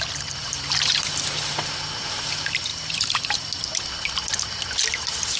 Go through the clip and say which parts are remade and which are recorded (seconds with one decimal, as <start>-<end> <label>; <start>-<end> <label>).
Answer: 0.0-0.4 recorded; 0.4-1.1 remade; 1.1-2.7 recorded; 2.7-3.5 remade; 3.5-5.4 recorded